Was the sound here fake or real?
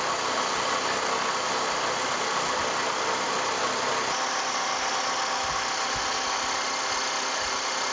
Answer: real